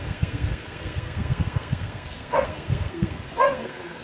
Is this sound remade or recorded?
remade